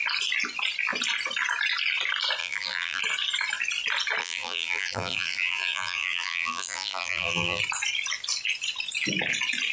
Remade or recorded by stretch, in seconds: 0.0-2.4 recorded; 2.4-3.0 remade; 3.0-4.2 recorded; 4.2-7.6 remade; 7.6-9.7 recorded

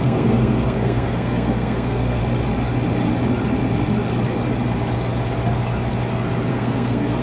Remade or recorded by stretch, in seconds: 0.0-2.2 remade; 2.2-6.5 recorded; 6.5-7.2 remade